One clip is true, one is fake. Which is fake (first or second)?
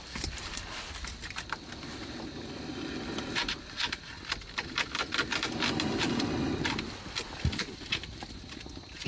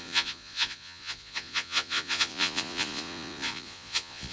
second